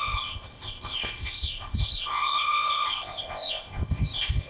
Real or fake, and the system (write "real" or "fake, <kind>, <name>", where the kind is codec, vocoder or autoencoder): fake, codec, ZipCodec